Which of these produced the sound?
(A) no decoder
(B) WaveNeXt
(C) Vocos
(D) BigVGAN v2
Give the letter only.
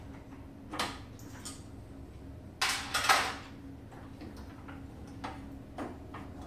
A